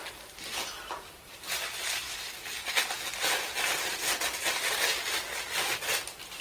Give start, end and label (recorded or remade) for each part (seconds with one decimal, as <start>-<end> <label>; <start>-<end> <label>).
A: 0.0-6.4 recorded